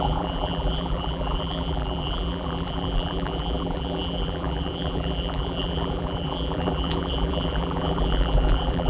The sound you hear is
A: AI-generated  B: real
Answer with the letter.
A